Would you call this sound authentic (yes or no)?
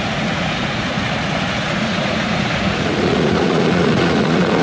no